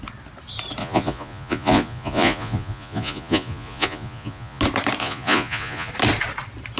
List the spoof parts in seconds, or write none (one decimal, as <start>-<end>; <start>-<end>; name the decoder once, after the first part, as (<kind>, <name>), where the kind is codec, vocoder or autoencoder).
0.8-4.6 (vocoder, Vocos); 5.0-5.9